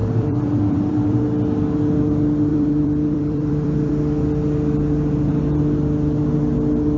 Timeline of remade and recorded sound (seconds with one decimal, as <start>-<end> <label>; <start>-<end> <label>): 0.0-1.2 remade; 1.2-2.5 recorded; 2.5-3.9 remade; 3.9-7.0 recorded